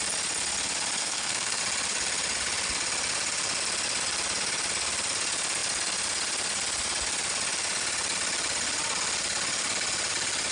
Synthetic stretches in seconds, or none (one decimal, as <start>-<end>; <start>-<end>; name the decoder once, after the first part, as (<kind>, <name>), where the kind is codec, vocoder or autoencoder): 1.0-1.6 (codec, SNAC)